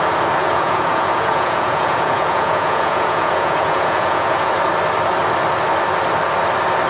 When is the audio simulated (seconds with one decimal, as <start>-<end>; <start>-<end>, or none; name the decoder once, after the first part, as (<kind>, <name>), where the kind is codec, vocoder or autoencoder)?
0.4-4.5 (vocoder, Vocos)